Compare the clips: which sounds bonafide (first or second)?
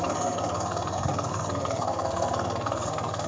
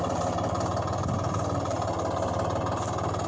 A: second